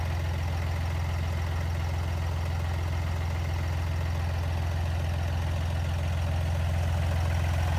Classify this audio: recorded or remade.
recorded